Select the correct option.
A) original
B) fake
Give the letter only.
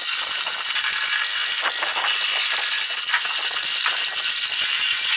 A